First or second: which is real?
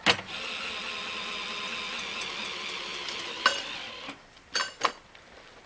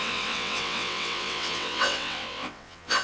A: first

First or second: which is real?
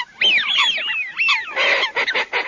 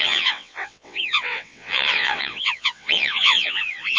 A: first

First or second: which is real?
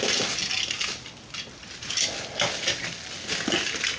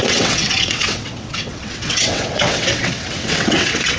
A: first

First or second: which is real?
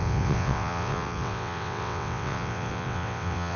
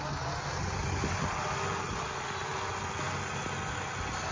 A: second